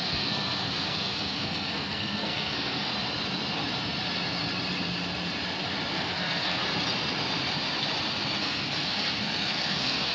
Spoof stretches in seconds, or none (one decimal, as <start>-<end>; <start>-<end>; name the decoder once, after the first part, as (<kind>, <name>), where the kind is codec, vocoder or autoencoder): 0.0-2.9 (codec, SNAC); 5.9-6.6; 8.4-10.1